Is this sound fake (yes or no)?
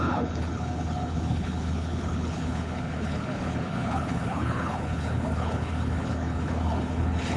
yes